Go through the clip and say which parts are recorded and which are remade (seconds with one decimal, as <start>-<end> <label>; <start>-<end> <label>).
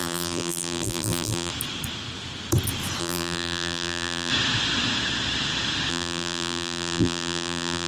0.0-1.5 remade; 1.5-3.0 recorded; 3.0-4.3 remade; 4.3-5.9 recorded; 5.9-7.9 remade